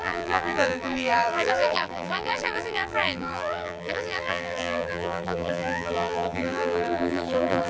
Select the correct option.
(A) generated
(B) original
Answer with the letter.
A